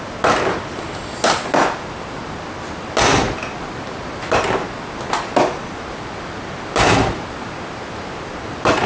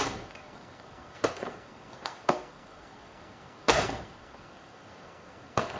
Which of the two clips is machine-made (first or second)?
second